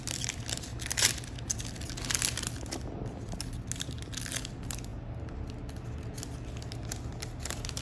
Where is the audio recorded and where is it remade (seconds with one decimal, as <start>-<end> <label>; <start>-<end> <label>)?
0.0-7.8 recorded